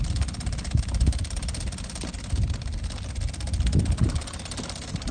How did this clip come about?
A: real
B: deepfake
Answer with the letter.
A